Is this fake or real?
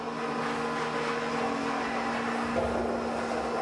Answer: real